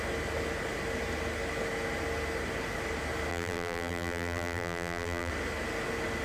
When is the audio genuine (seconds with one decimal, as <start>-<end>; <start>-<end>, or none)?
0.0-3.3; 5.3-6.2